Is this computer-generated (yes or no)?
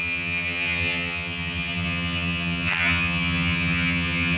yes